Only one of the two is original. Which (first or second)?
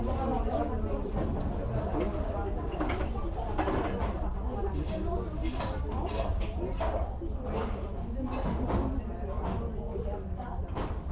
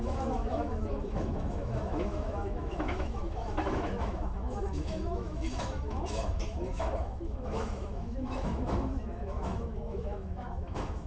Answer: first